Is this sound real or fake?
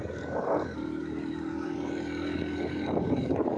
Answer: fake